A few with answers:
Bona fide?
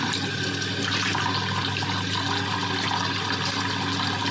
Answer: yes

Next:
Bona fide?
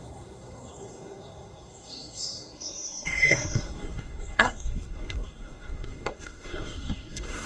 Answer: no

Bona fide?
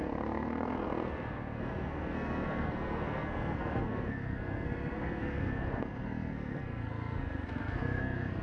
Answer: no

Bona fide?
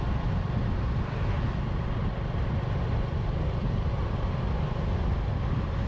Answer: yes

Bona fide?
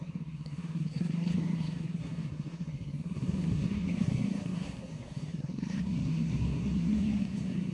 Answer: no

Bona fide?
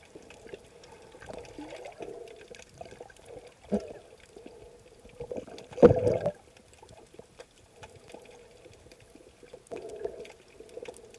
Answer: yes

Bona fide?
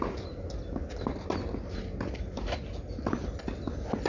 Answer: yes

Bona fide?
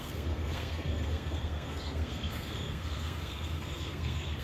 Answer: no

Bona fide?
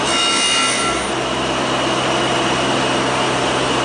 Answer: yes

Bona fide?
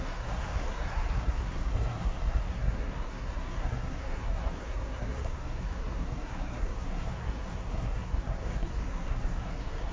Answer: no